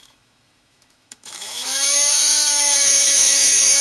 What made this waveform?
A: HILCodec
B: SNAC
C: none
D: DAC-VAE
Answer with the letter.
D